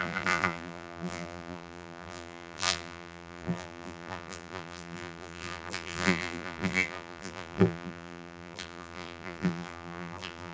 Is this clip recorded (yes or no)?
no